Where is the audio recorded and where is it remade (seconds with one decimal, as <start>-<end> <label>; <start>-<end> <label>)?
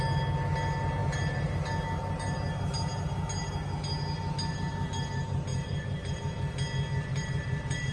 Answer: 0.0-1.0 recorded; 1.0-1.5 remade; 1.5-5.5 recorded; 5.5-6.2 remade; 6.2-7.1 recorded; 7.1-7.9 remade